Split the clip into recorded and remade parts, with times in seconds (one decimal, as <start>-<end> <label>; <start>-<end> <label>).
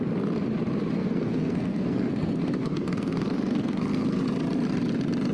0.0-1.0 recorded; 1.0-4.2 remade; 4.2-5.3 recorded